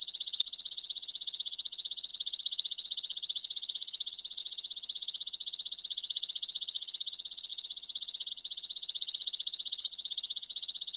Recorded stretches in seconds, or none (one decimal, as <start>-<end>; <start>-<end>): none